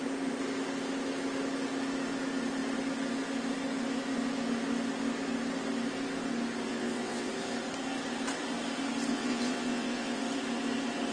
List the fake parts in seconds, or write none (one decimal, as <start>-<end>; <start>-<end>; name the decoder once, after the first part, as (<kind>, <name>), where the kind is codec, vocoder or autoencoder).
6.7-7.3 (vocoder, WaveNeXt); 9.1-10.2